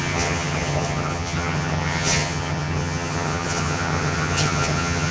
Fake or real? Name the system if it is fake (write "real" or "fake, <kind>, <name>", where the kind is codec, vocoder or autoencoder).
fake, vocoder, HiFi-GAN